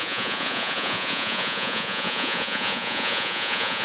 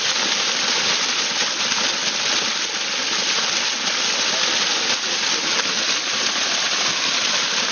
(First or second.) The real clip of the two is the second